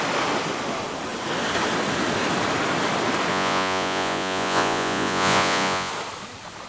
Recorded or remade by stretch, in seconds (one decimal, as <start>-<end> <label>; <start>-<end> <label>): 0.0-3.3 recorded; 3.3-5.9 remade; 5.9-6.7 recorded